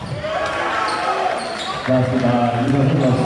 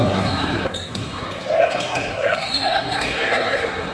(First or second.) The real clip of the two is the first